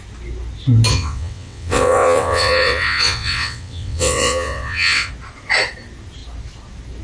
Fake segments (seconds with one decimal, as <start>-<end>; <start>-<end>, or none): 0.9-5.1